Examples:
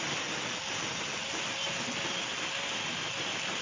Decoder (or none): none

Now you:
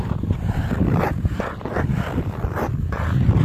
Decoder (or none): vocoder, BigVGAN v2